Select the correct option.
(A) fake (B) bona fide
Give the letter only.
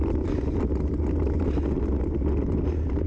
B